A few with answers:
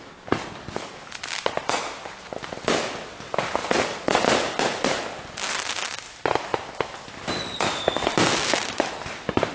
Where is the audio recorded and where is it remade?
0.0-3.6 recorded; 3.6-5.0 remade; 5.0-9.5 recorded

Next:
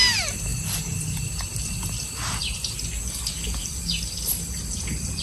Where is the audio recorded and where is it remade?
0.0-5.2 recorded

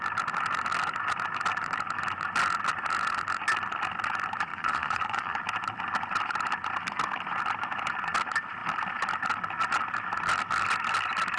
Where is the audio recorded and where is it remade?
0.0-4.5 recorded; 4.5-5.4 remade; 5.4-11.4 recorded

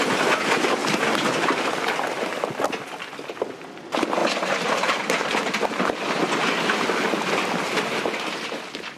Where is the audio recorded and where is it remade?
0.0-4.2 recorded; 4.2-7.3 remade; 7.3-9.0 recorded